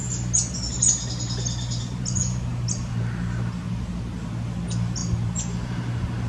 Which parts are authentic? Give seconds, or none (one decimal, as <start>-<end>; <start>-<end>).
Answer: 0.0-6.3